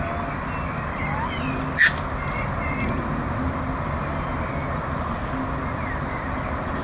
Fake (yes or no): no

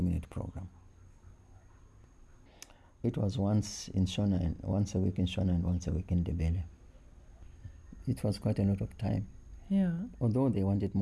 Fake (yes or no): no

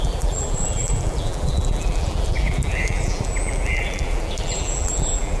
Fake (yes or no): yes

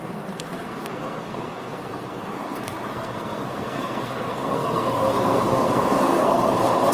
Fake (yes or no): yes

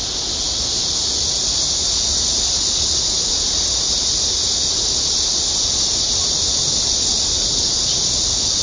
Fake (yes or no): no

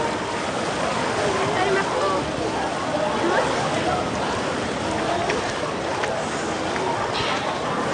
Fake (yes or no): no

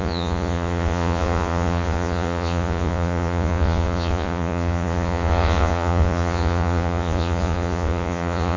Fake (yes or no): yes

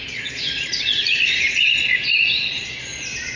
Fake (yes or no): yes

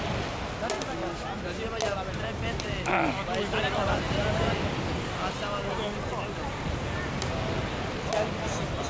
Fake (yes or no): no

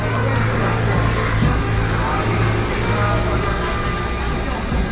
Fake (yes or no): no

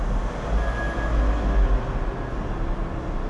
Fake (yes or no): no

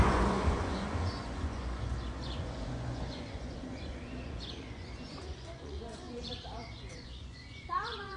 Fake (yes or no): yes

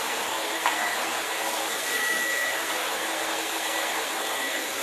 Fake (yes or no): yes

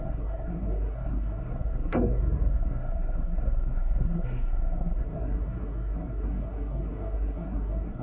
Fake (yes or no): yes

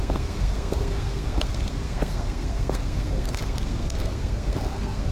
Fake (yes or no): yes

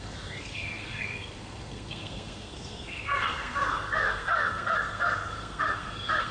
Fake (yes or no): yes